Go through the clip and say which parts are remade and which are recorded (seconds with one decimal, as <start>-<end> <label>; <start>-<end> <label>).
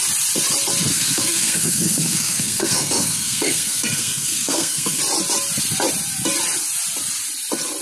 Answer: 0.0-0.9 recorded; 0.9-5.0 remade; 5.0-7.8 recorded